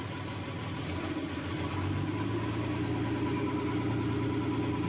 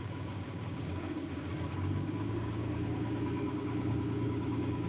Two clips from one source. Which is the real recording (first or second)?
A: first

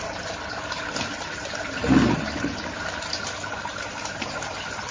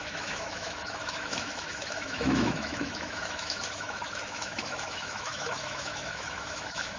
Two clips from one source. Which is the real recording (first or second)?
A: first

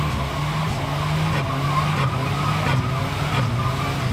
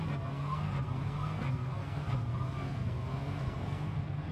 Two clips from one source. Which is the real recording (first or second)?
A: first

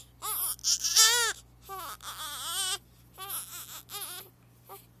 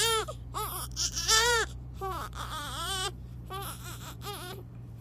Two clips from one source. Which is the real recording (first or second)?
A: first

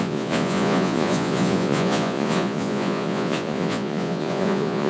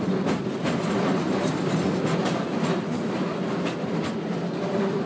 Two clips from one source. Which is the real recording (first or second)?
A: second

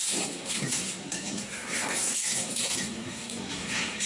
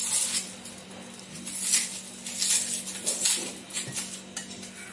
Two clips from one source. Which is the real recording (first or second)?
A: second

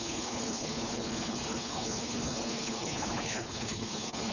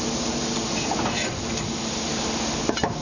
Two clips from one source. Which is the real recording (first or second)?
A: second